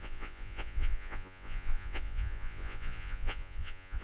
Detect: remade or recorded remade